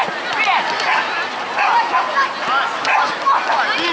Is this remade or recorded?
recorded